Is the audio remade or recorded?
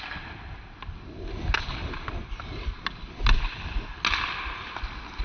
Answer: recorded